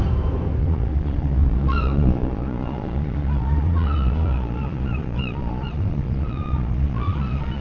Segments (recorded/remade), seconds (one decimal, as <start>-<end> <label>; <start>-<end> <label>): 0.0-0.6 recorded; 0.6-7.6 remade